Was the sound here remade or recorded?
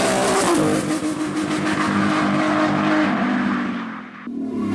recorded